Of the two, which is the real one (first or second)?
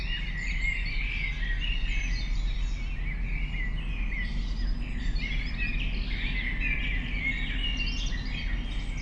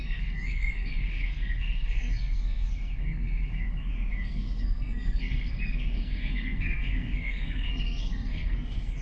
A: first